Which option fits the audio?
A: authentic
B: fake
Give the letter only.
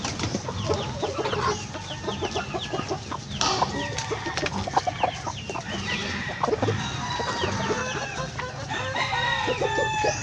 A